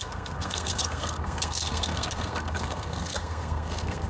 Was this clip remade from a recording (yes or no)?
yes